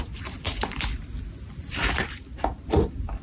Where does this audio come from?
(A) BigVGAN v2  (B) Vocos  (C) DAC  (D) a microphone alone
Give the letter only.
A